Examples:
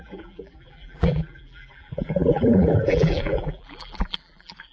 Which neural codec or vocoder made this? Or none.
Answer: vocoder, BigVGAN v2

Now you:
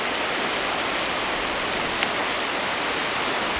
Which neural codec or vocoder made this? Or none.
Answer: none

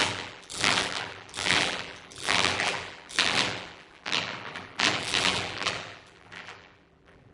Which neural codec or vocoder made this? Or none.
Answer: vocoder, BigVGAN v2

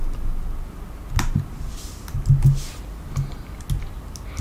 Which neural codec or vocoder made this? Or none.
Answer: none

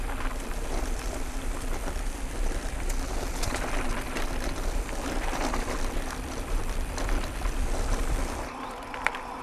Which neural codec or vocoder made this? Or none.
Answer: vocoder, BigVGAN v2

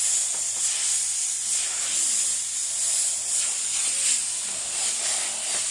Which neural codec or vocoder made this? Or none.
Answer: none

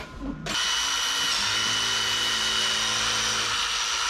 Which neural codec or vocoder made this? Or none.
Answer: none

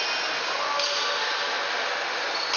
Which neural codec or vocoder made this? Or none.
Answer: none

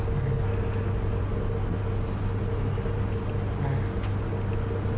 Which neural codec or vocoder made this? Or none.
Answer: none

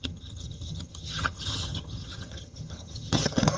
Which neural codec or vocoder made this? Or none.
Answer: vocoder, HiFi-GAN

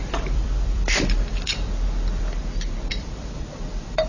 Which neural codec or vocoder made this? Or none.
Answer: vocoder, BigVGAN v2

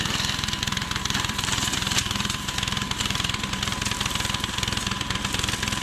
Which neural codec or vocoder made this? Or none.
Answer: vocoder, BigVGAN v2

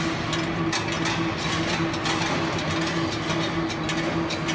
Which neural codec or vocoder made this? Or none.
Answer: none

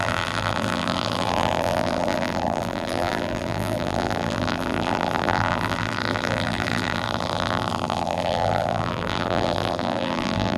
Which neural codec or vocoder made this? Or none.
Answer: vocoder, BigVGAN v2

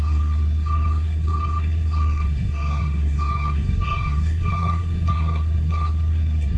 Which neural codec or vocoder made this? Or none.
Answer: codec, SNAC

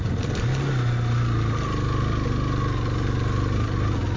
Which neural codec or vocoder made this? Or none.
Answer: none